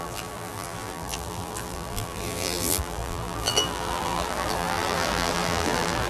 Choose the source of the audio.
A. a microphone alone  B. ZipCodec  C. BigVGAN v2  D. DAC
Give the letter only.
C